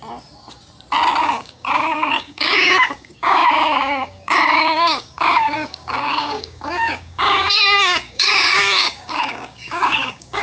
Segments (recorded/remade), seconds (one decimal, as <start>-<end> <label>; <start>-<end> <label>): 0.0-1.2 recorded; 1.2-10.4 remade